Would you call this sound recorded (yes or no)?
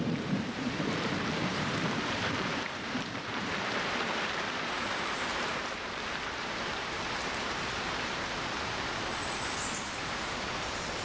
no